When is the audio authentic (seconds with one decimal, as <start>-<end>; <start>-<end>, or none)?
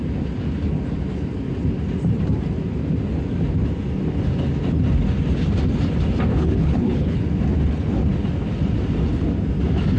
0.0-6.3; 7.2-10.0